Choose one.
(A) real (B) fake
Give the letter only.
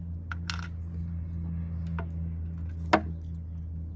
A